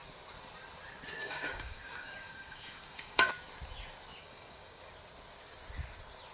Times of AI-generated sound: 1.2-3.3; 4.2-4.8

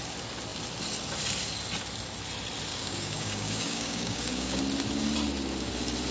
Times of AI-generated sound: 2.7-4.6

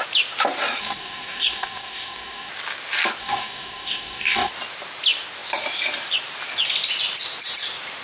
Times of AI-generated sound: 0.8-2.5; 3.2-4.5

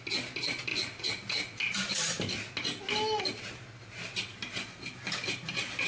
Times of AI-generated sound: none

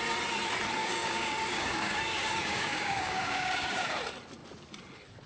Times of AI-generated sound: 0.8-4.0

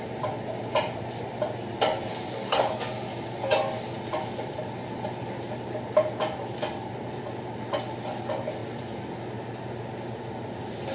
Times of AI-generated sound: 2.1-2.9

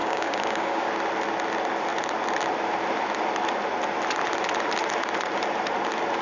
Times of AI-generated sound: 0.0-0.9